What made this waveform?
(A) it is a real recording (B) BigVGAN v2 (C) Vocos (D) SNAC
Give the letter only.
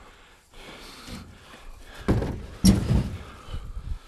A